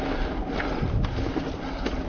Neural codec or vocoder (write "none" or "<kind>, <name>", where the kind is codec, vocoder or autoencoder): none